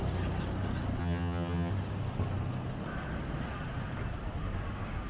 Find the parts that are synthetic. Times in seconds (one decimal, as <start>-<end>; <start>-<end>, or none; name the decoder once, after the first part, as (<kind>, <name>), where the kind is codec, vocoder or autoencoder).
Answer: 1.0-1.7 (vocoder, HiFi-GAN)